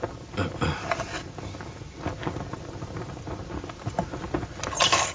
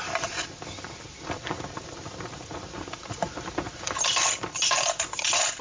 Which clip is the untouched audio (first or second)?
first